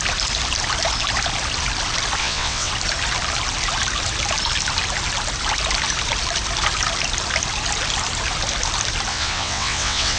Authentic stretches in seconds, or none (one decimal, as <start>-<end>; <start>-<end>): 0.0-2.2; 2.7-9.1